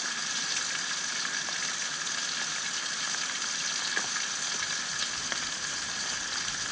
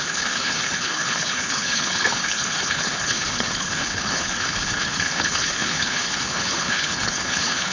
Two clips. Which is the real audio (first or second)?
first